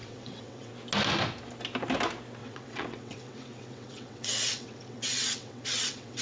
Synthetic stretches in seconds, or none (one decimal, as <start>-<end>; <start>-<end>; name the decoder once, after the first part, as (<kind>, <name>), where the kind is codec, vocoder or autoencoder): 0.0-0.7 (vocoder, WaveNeXt); 2.4-6.2